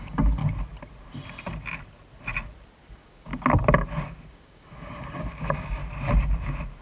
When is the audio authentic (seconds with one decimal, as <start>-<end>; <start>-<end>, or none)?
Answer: 0.4-2.9; 3.3-4.3; 5.8-6.8